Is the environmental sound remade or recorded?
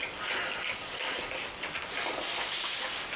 recorded